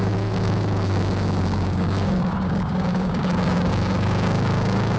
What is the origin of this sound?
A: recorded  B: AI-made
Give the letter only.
B